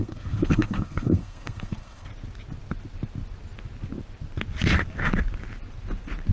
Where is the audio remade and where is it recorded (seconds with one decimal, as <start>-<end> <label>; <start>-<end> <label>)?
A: 0.0-2.1 remade; 2.1-6.3 recorded